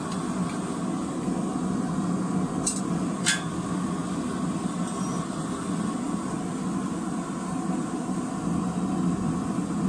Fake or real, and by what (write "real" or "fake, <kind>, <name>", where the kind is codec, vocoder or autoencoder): real